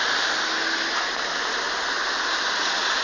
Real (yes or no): yes